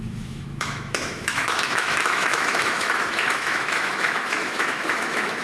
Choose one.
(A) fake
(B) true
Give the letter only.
A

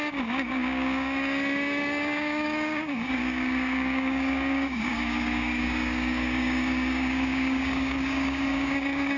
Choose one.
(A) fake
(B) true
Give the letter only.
A